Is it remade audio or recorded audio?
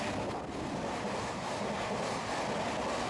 recorded